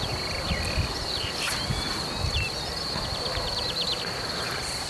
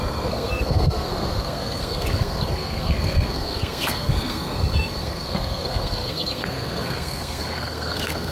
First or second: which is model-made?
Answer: second